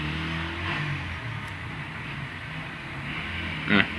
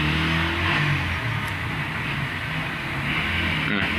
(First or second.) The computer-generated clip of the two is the first